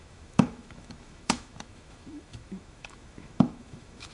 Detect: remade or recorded remade